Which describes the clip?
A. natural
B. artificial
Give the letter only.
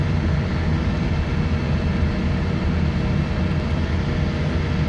A